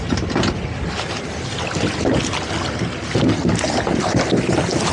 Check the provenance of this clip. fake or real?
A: real